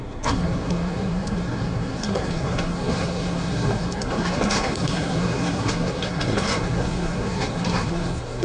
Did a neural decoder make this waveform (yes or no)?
yes